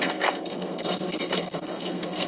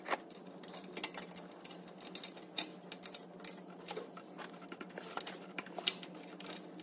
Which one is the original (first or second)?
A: second